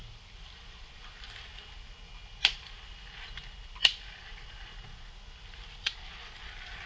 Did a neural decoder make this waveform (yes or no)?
no